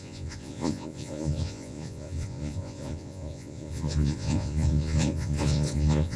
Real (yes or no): no